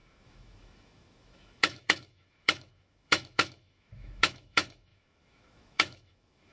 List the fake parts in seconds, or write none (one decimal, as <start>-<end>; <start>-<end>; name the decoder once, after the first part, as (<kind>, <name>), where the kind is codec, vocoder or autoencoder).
0.0-6.5 (autoencoder, DAC-VAE)